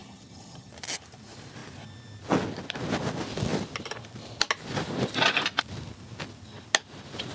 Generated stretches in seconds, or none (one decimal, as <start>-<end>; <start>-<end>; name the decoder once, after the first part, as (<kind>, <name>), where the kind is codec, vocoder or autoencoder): 0.0-0.7 (vocoder, HiFi-GAN)

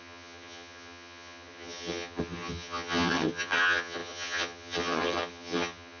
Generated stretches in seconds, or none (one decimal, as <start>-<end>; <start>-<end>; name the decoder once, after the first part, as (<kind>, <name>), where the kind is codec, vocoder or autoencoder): 0.0-6.0 (vocoder, HiFi-GAN)

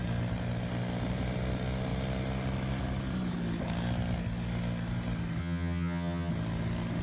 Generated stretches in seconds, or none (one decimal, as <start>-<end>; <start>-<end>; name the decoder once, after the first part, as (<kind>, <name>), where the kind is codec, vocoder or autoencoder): 5.4-6.3 (vocoder, HiFi-GAN)

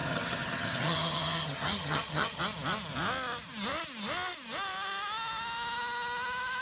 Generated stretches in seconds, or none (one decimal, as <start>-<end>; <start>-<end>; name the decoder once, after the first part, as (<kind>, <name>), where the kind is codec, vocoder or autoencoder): 0.0-2.4 (vocoder, HiFi-GAN)

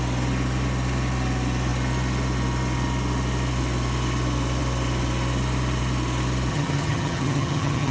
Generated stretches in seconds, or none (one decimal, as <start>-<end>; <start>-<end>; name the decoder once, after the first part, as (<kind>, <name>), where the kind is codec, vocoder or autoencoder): 6.5-7.9 (vocoder, HiFi-GAN)

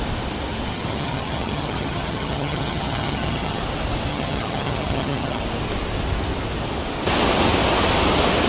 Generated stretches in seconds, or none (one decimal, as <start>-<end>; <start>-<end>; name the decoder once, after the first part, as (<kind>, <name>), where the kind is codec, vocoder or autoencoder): 0.7-3.6 (vocoder, HiFi-GAN); 4.1-5.4